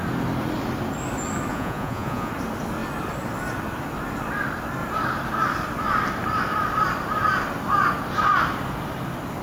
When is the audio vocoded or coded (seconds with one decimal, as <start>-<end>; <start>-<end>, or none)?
1.5-2.3